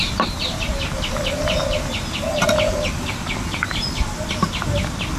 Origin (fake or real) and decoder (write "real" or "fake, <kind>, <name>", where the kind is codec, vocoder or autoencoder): real